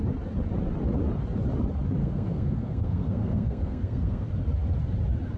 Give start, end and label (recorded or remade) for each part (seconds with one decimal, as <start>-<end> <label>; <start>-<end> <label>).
0.0-2.0 recorded; 2.0-4.3 remade; 4.3-5.4 recorded